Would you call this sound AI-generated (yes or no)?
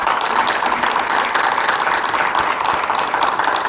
no